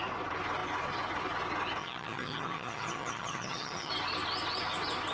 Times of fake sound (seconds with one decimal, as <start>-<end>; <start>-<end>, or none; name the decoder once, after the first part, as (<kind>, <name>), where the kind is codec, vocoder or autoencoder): 1.8-3.9 (vocoder, HiFi-GAN)